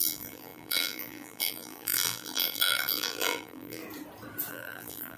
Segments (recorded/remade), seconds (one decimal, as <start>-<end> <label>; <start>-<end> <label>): 0.0-3.8 remade; 3.8-4.5 recorded; 4.5-5.2 remade